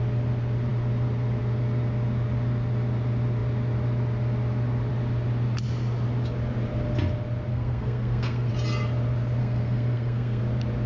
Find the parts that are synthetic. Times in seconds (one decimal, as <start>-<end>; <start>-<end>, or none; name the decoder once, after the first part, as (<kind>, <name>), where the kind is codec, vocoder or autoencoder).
7.5-8.5 (codec, SNAC); 9.4-10.4